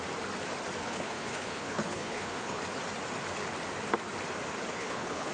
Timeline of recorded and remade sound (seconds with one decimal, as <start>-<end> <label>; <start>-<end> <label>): 0.0-0.8 recorded; 0.8-2.6 remade; 2.6-4.7 recorded; 4.7-5.3 remade